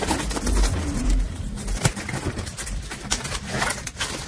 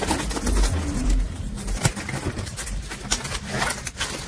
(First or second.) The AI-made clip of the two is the first